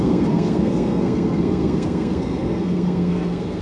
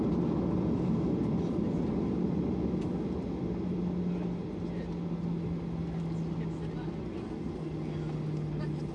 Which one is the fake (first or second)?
first